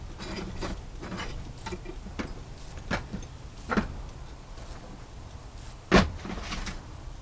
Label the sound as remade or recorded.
recorded